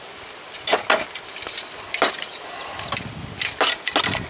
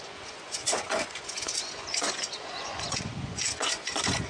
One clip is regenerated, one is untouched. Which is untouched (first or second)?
first